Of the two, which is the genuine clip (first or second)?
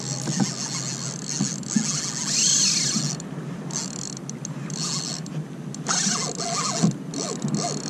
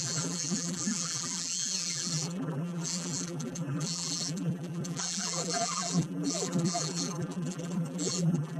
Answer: first